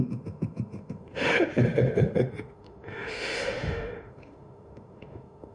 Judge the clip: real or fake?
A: fake